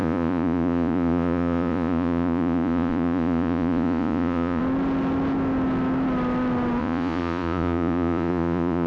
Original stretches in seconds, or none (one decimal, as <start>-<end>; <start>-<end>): 4.6-6.8